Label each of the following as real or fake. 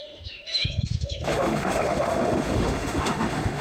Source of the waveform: fake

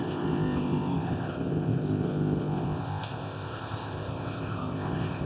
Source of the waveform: fake